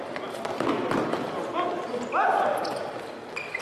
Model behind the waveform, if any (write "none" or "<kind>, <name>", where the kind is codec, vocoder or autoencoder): none